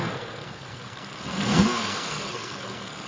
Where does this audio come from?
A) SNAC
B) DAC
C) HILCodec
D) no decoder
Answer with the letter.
A